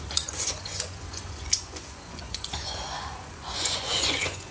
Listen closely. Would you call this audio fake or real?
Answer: fake